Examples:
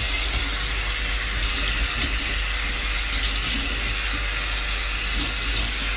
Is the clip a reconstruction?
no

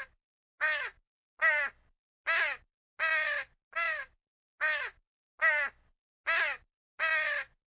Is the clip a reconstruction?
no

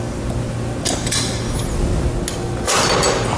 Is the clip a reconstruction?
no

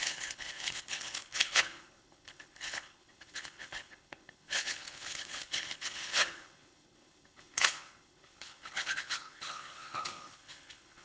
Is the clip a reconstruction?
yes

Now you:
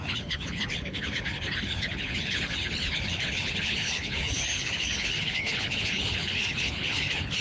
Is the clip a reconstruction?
yes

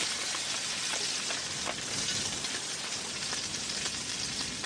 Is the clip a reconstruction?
no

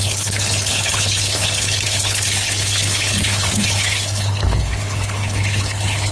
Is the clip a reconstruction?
yes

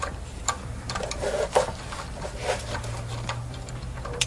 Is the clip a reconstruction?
no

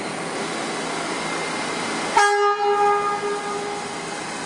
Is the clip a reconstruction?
no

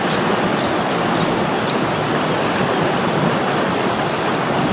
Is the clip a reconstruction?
no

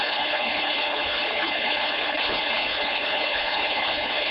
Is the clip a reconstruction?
yes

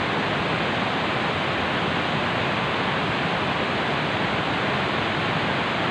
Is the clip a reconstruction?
no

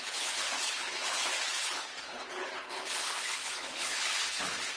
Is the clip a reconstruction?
yes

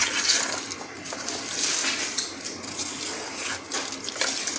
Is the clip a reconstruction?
no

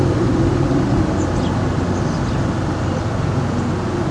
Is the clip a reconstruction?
no